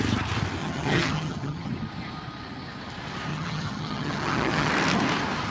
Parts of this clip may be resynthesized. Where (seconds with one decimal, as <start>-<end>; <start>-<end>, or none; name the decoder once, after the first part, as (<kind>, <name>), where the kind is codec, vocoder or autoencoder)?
0.6-1.7 (vocoder, HiFi-GAN); 3.3-4.7

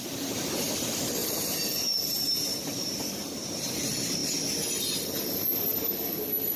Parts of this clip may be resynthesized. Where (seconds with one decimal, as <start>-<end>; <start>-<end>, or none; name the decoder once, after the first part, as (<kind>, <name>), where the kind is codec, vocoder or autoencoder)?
1.2-3.1 (vocoder, BigVGAN v2)

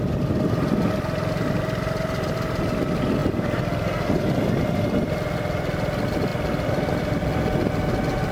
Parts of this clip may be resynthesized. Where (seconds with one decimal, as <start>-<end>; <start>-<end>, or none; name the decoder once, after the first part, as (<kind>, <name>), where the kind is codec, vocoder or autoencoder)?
none